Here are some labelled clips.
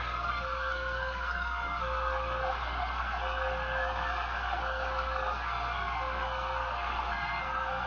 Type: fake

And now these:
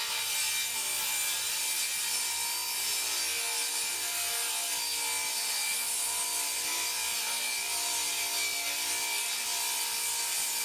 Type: real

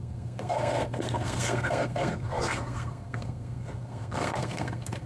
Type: fake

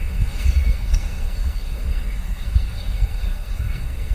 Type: fake